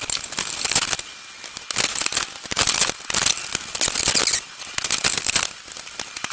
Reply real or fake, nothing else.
real